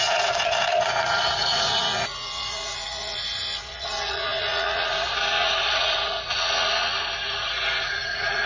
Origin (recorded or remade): remade